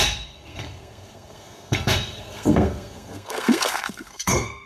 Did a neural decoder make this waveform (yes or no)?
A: yes